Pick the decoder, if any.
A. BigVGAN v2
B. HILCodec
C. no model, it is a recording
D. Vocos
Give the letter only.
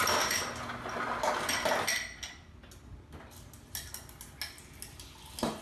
C